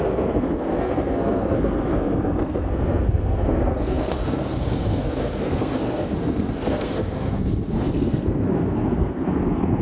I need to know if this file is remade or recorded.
remade